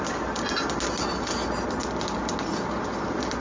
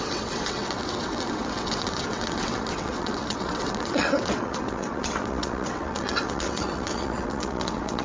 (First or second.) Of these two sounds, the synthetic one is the second